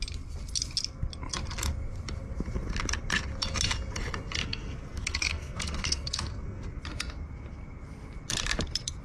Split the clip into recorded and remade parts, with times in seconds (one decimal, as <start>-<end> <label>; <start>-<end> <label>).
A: 0.0-4.4 recorded; 4.4-6.8 remade; 6.8-9.0 recorded